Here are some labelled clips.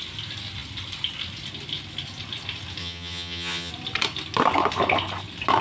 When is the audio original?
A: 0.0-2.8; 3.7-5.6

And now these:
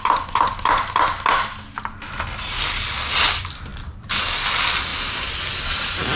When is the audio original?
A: 0.0-6.2

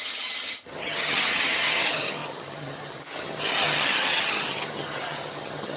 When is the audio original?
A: none

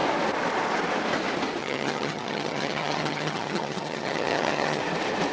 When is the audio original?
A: 0.0-1.6; 4.8-5.3

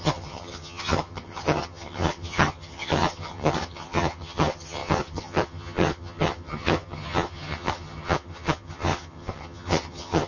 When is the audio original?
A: none